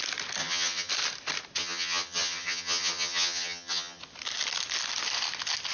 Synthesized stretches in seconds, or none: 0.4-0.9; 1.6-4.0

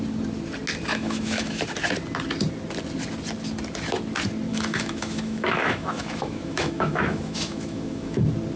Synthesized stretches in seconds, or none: 0.9-1.6; 4.5-8.2

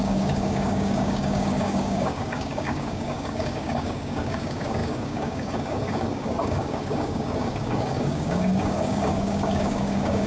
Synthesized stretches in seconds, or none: 0.0-10.3

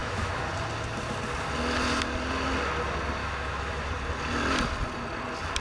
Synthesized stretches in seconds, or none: 0.0-0.5; 3.2-3.9

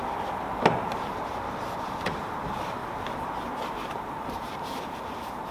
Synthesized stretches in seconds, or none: 0.0-5.5

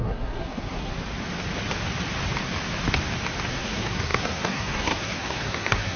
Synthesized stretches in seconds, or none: 0.0-0.9; 3.5-6.0

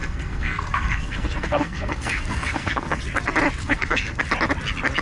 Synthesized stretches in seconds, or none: 0.0-3.0; 3.6-4.2